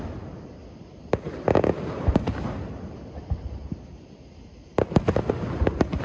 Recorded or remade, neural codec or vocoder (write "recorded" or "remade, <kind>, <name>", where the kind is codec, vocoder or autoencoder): recorded